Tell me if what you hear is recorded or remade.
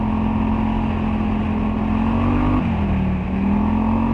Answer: recorded